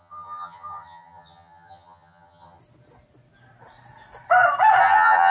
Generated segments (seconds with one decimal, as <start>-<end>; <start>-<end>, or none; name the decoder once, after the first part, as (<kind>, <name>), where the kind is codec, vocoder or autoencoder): 0.0-2.6 (vocoder, HiFi-GAN); 4.8-5.3